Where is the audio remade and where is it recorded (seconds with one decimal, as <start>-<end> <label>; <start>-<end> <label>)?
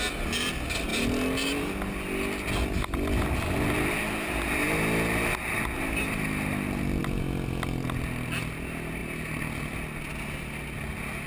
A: 0.0-11.3 recorded